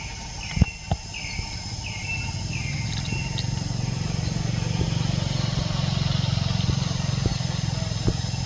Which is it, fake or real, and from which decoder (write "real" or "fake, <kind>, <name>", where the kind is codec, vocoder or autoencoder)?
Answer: real